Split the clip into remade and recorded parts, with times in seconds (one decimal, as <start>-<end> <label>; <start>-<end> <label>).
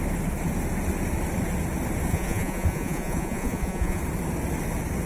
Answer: 0.0-2.1 recorded; 2.1-4.0 remade; 4.0-5.1 recorded